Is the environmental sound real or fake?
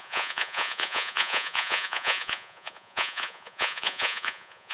fake